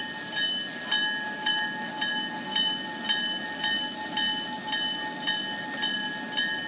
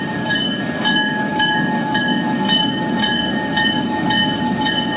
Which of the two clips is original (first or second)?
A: first